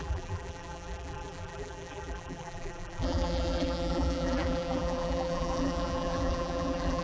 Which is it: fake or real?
fake